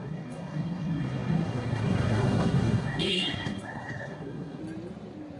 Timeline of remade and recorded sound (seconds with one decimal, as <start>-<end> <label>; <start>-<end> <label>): 0.0-4.6 remade; 4.6-5.4 recorded